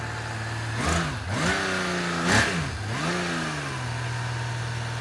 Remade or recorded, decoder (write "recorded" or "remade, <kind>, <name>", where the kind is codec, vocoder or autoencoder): recorded